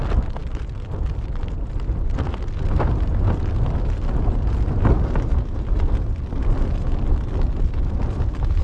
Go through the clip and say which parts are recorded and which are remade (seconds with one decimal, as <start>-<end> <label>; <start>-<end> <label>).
0.0-8.6 recorded